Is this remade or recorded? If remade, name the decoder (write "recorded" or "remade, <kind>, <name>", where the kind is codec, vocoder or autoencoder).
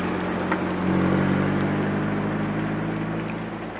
recorded